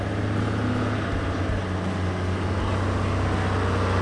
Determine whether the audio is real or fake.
real